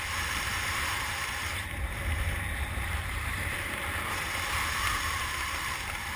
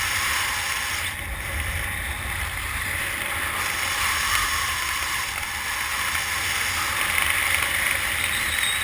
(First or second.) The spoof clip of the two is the first